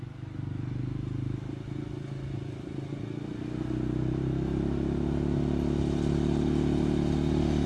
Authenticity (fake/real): real